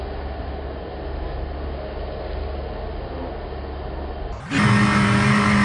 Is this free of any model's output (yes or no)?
yes